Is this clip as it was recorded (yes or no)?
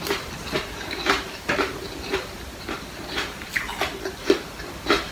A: no